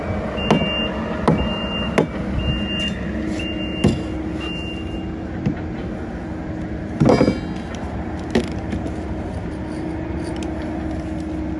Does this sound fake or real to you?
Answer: real